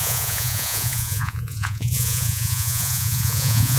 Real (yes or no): no